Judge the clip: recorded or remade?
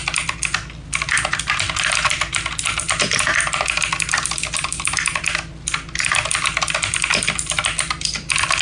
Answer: recorded